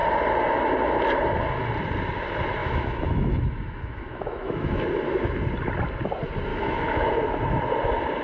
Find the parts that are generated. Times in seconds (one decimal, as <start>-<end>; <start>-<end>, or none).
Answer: 2.6-4.8; 6.5-7.1